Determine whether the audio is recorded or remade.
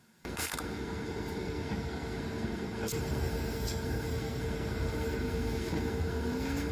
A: remade